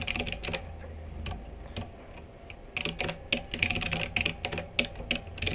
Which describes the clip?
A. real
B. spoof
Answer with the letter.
A